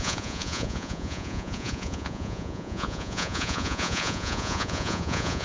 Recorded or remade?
remade